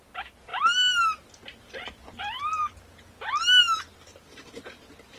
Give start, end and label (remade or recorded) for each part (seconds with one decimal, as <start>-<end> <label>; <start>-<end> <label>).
0.0-5.2 recorded

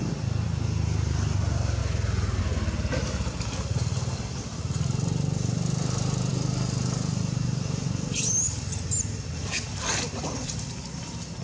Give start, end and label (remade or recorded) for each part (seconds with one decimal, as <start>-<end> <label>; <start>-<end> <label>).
0.0-11.4 recorded